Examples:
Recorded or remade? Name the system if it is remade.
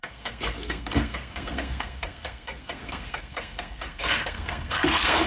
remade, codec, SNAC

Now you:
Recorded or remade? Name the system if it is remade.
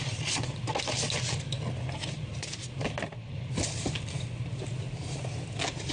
recorded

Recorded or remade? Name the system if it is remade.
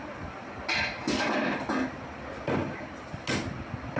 recorded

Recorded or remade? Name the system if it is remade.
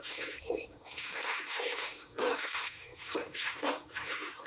remade, codec, SNAC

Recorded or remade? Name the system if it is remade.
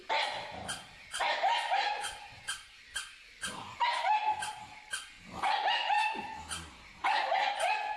recorded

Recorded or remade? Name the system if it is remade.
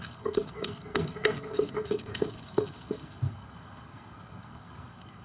remade, codec, SNAC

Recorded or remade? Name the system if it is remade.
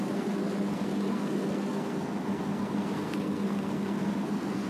remade, codec, SNAC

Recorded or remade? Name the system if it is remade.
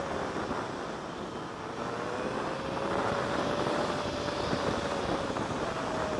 recorded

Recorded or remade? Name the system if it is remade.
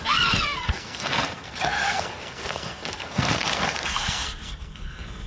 remade, codec, SNAC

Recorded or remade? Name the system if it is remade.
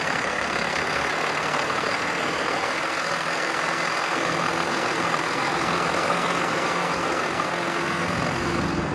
remade, codec, SNAC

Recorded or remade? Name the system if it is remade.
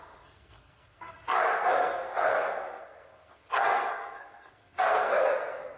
remade, codec, SNAC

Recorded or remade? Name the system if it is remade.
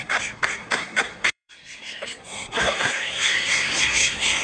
remade, codec, SNAC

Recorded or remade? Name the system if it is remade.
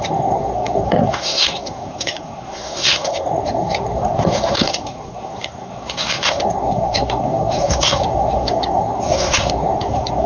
remade, codec, SNAC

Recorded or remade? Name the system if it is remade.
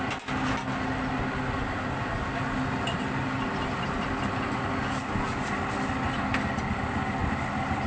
recorded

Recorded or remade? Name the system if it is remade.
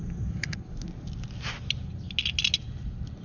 recorded